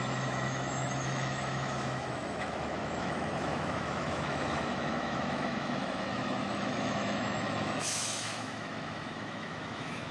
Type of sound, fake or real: fake